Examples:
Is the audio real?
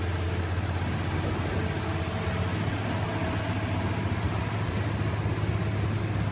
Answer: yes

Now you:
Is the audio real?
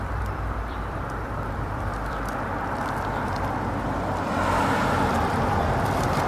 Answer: no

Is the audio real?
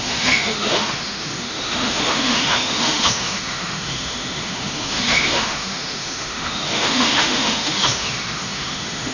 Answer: no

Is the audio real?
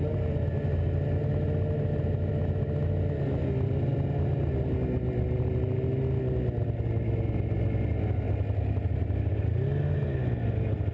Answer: yes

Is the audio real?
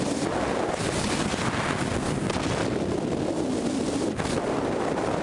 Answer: yes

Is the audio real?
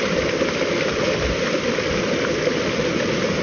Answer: yes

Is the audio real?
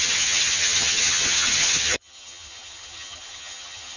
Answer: no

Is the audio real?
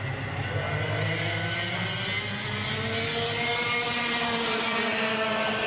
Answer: yes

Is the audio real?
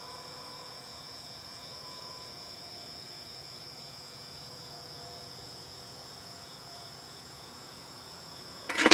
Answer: no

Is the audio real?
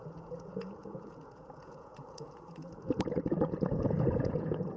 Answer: no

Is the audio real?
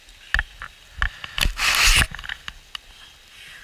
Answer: yes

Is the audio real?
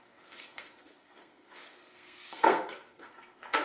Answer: no